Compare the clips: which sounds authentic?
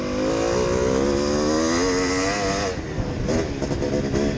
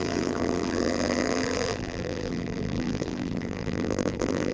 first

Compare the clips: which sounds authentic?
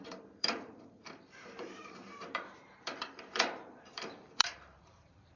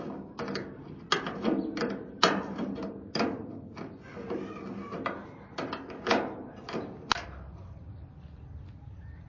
second